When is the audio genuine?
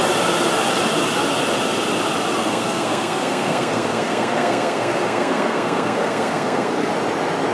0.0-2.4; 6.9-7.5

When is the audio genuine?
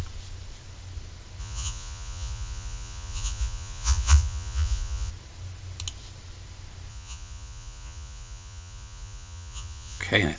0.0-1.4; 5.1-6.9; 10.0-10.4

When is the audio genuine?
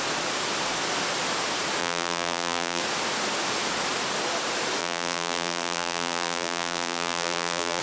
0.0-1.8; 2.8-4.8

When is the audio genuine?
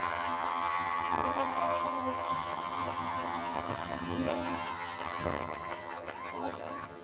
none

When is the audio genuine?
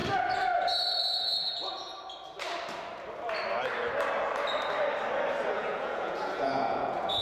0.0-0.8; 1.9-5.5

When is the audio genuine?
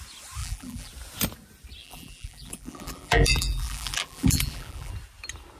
0.0-0.4; 0.9-1.8; 4.9-5.6